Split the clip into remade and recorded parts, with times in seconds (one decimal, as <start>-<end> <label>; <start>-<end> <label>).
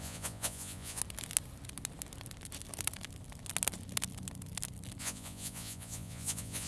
0.0-1.0 remade; 1.0-5.0 recorded; 5.0-6.7 remade